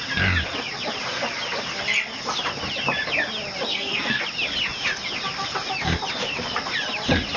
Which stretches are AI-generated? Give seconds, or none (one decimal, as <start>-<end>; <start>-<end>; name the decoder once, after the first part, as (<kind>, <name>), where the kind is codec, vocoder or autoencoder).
3.7-4.2 (codec, SNAC)